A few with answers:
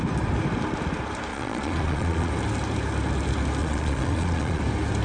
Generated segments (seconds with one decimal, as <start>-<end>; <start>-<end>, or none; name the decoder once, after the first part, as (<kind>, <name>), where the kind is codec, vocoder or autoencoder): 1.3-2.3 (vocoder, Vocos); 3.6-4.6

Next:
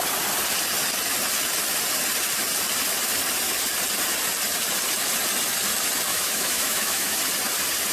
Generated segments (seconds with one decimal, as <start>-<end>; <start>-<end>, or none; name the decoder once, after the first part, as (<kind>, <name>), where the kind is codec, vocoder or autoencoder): 6.1-7.2 (autoencoder, DAC-VAE)

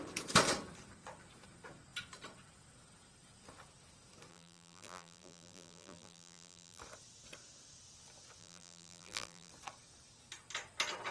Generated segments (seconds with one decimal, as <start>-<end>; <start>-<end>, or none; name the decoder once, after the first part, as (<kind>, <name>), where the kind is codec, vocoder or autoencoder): 4.3-6.8 (vocoder, BigVGAN v2); 8.4-9.5

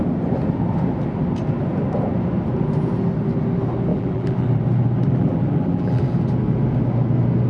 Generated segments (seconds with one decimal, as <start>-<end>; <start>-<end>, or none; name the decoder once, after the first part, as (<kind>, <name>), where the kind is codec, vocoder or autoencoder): 3.9-4.6 (vocoder, BigVGAN v2); 5.0-6.0

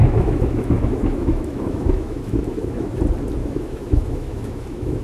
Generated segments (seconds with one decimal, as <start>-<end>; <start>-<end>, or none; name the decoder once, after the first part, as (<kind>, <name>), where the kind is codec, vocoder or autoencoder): 0.0-3.0 (autoencoder, DAC-VAE); 3.4-5.0

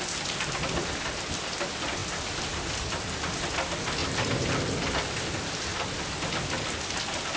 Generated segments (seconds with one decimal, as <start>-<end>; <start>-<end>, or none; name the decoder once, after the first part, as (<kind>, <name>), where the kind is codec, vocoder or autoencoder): 0.0-4.0 (vocoder, BigVGAN v2); 4.5-5.7; 6.3-7.4

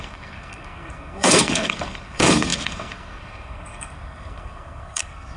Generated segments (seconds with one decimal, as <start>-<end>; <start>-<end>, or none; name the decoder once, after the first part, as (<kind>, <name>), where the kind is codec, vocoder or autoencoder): 0.0-5.4 (codec, SNAC)